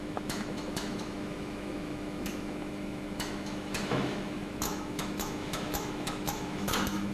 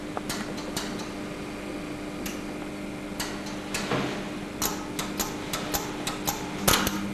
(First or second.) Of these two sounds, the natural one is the second